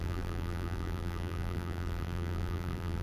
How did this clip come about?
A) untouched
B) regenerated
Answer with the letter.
B